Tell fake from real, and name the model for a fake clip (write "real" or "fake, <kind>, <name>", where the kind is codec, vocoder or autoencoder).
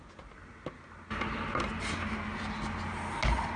real